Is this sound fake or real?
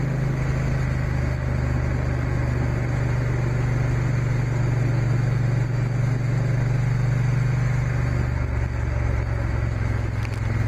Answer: real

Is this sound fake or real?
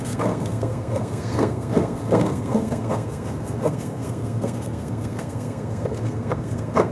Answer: fake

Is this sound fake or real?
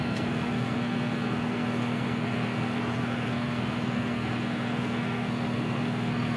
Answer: fake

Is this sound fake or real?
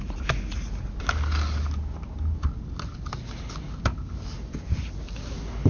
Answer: real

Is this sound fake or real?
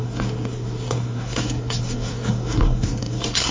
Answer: fake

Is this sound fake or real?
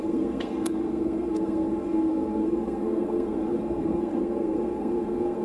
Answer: fake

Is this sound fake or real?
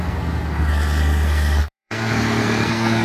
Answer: fake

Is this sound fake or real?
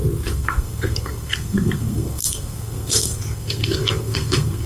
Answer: fake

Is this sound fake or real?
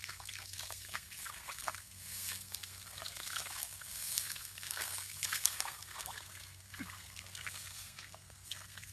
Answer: fake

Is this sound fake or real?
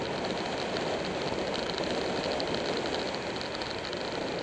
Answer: real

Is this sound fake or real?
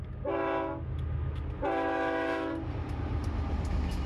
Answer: real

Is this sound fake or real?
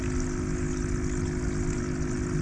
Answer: real